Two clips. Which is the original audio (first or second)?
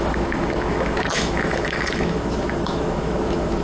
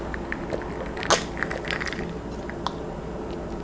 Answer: second